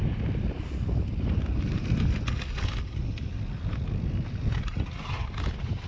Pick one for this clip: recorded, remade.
recorded